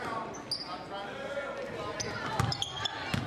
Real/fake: real